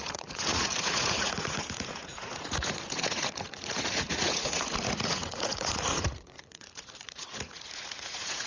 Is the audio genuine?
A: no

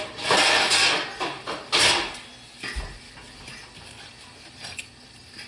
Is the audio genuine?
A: yes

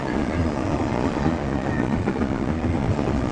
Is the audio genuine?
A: no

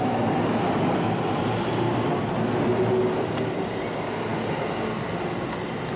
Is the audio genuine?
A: yes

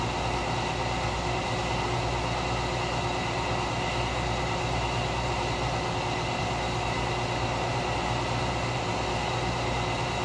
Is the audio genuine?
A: yes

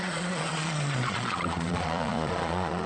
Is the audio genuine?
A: no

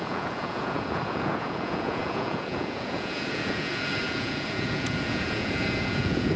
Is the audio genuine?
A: no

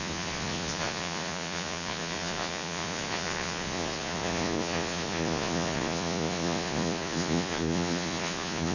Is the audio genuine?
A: no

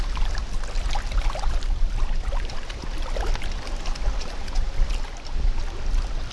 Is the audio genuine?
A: yes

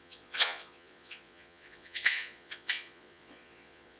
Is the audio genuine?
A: no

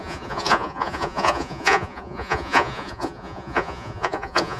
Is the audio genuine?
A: no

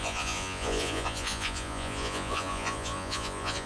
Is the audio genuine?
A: no